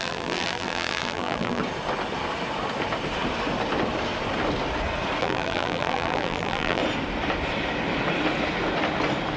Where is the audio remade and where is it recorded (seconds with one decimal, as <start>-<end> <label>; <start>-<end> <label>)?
0.0-1.6 remade; 1.6-5.2 recorded; 5.2-6.8 remade; 6.8-9.4 recorded